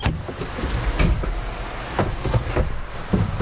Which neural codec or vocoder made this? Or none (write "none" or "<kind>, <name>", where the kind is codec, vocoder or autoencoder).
none